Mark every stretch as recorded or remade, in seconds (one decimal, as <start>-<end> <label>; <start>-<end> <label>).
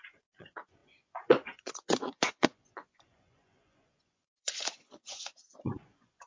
0.0-6.3 remade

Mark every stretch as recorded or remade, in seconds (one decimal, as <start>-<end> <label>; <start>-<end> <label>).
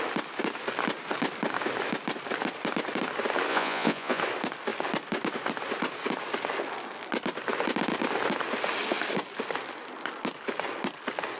0.0-3.5 recorded; 3.5-4.2 remade; 4.2-11.4 recorded